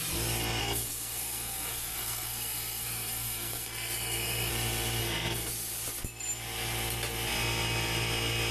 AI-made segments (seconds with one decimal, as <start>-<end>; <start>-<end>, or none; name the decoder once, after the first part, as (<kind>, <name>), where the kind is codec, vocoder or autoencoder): 0.6-4.5 (codec, SNAC); 5.0-5.5